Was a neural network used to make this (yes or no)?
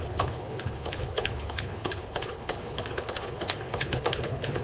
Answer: yes